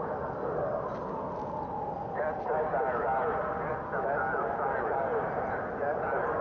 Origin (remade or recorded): recorded